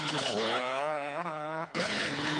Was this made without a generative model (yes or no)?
no